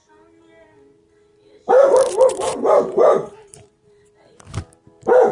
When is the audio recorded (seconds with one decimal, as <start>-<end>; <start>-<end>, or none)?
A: 0.0-1.6; 4.0-5.3